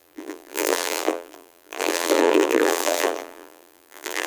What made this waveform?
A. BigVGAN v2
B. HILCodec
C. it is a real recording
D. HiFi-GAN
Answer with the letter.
A